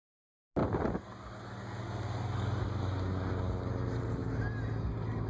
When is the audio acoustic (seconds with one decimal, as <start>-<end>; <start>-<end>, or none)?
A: 0.0-5.3